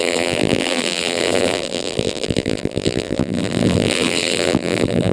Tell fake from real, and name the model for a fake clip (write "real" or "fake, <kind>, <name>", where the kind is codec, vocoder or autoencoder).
fake, vocoder, BigVGAN v2